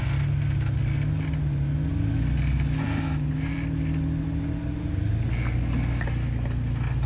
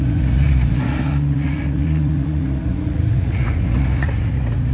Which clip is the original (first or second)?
first